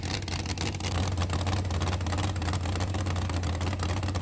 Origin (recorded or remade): recorded